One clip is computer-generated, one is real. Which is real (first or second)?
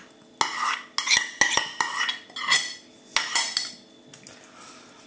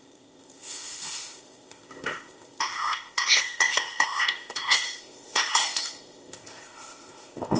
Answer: first